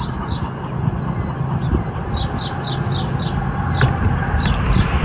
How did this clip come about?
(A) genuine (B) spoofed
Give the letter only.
A